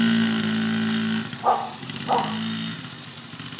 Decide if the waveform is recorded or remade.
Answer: recorded